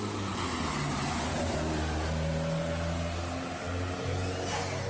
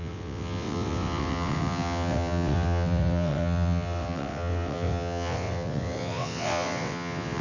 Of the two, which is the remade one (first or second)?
second